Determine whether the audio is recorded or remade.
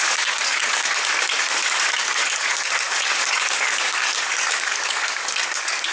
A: remade